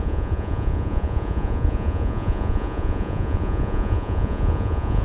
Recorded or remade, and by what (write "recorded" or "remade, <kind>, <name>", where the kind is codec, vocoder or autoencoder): remade, vocoder, Vocos